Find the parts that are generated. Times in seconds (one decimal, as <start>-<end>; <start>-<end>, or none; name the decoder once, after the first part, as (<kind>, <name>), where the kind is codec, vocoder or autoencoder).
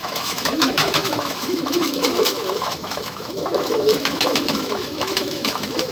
0.0-5.9 (autoencoder, DAC-VAE)